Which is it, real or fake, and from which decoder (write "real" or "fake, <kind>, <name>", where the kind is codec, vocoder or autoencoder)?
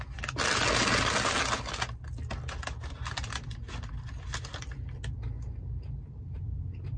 real